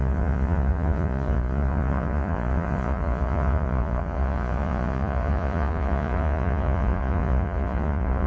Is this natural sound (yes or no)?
no